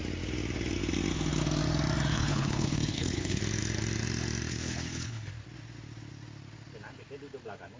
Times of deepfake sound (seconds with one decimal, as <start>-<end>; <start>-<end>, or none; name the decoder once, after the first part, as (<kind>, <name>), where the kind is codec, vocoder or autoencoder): 2.1-3.4 (codec, HILCodec); 4.5-5.3